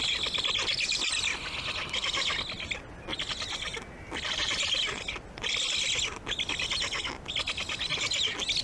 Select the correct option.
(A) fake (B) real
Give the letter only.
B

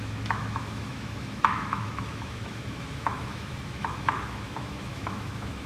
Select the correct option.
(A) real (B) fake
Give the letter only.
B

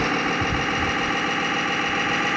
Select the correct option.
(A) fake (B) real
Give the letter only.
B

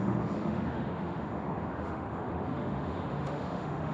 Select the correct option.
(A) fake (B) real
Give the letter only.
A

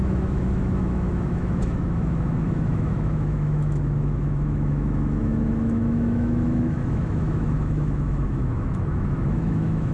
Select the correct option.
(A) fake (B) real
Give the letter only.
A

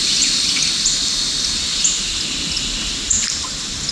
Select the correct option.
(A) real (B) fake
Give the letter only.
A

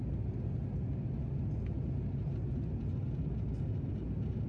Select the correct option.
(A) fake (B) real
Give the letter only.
B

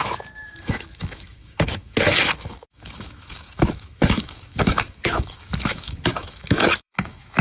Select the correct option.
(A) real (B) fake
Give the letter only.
B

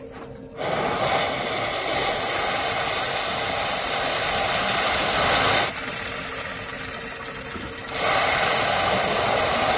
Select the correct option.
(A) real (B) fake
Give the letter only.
A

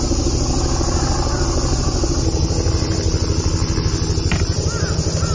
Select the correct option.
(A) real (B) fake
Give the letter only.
A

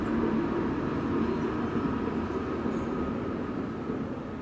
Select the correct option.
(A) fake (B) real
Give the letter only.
B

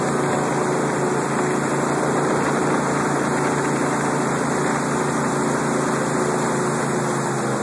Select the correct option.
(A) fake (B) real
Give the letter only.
B